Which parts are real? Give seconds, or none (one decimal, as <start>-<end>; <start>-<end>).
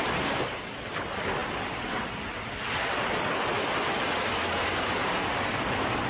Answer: 0.0-6.1